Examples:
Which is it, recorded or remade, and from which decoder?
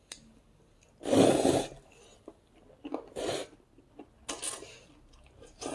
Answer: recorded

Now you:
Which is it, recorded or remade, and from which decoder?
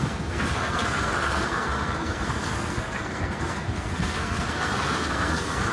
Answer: remade, codec, SNAC